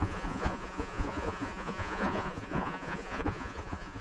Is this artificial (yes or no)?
yes